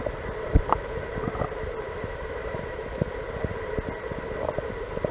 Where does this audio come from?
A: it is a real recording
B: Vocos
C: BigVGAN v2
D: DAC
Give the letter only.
C